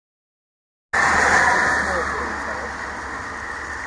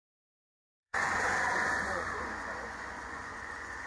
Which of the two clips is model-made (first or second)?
second